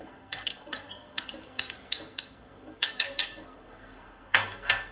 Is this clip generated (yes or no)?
yes